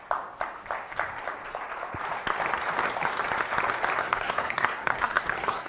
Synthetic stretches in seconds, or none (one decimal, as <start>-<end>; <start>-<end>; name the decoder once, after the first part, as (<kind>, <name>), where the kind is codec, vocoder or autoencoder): 4.0-5.7 (codec, SNAC)